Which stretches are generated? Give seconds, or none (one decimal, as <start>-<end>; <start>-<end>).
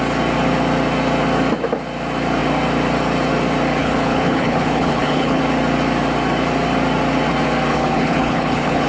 3.8-5.4; 7.7-8.9